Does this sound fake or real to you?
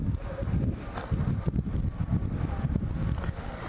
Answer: real